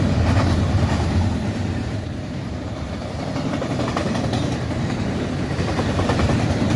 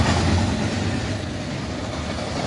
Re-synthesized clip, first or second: first